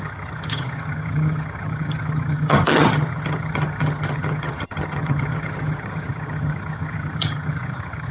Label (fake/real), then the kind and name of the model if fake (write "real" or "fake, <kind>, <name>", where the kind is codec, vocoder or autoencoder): fake, vocoder, HiFi-GAN